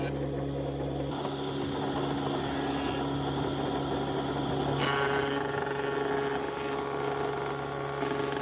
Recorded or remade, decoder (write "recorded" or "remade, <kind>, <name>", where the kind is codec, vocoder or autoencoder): recorded